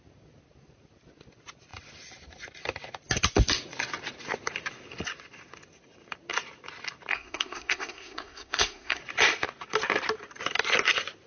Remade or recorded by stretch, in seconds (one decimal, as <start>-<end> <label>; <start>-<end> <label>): 0.0-7.1 recorded; 7.1-9.0 remade; 9.0-11.3 recorded